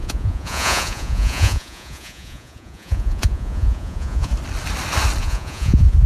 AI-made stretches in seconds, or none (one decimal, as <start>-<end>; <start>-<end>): 0.0-4.3; 5.2-6.1